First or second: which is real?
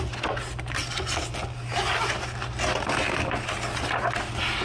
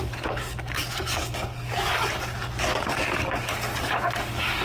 first